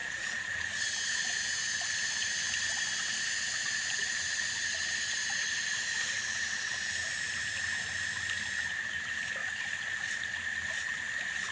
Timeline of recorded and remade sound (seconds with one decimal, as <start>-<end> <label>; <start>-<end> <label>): 0.0-0.8 remade; 0.8-9.4 recorded; 9.4-10.2 remade; 10.2-11.5 recorded